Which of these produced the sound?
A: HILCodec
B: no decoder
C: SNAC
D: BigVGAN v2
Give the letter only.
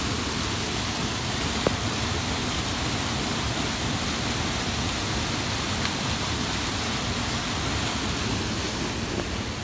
B